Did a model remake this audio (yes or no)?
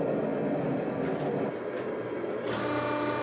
no